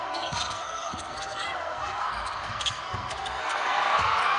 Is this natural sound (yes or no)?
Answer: no